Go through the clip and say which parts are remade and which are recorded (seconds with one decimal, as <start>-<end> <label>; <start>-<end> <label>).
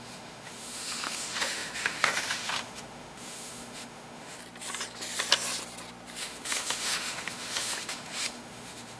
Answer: 0.0-4.4 remade; 4.4-6.2 recorded; 6.2-9.0 remade